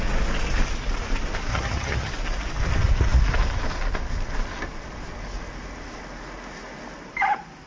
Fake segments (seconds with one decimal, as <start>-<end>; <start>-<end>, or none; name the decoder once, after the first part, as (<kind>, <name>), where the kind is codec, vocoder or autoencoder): 1.5-2.1 (vocoder, HiFi-GAN)